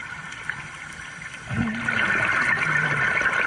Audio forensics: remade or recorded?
recorded